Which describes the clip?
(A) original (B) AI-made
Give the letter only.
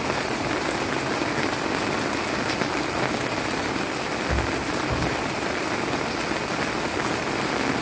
A